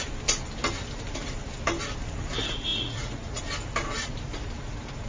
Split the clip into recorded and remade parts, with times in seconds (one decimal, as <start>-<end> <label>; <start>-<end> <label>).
0.0-2.7 recorded; 2.7-3.4 remade; 3.4-5.1 recorded